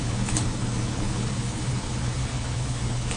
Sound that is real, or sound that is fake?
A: fake